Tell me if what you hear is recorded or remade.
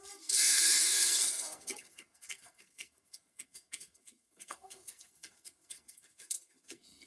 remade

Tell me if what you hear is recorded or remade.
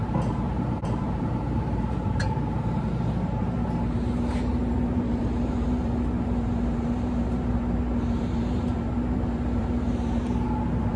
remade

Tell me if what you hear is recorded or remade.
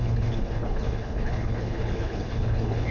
remade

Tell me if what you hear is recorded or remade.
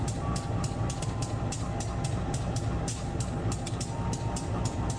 recorded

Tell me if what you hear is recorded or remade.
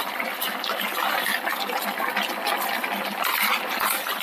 recorded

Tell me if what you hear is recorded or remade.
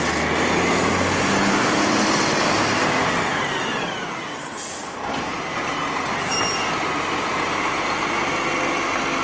recorded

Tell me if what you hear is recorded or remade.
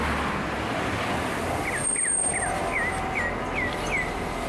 recorded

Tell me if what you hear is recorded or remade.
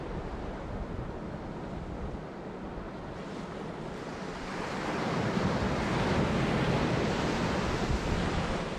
recorded